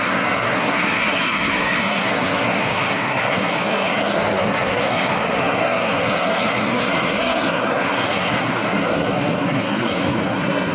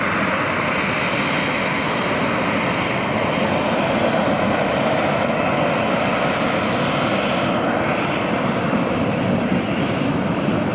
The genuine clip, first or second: second